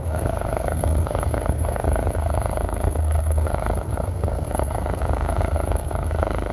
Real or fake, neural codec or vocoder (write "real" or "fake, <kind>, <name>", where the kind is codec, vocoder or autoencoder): fake, codec, SNAC